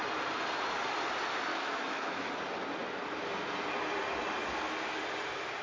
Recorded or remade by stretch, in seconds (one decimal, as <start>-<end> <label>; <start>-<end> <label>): 0.0-1.5 recorded; 1.5-2.3 remade; 2.3-5.6 recorded